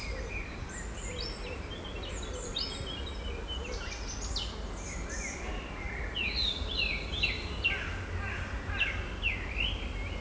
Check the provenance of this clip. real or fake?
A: real